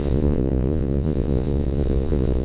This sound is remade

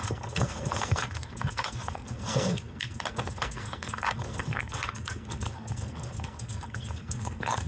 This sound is remade